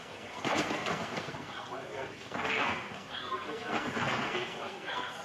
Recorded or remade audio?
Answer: remade